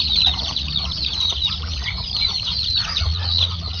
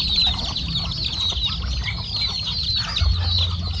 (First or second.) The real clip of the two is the second